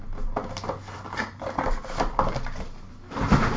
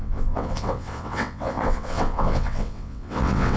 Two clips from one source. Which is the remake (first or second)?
second